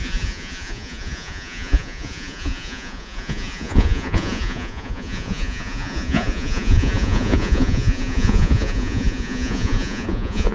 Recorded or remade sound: remade